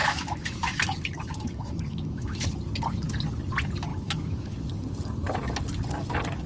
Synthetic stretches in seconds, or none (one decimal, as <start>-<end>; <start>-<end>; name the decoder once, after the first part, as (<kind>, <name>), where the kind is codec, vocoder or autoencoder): 0.0-2.5 (autoencoder, DAC-VAE); 3.9-4.7